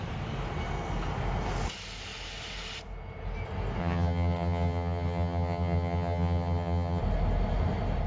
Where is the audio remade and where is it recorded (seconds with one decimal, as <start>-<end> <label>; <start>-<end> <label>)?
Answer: 0.0-3.8 recorded; 3.8-7.0 remade; 7.0-8.1 recorded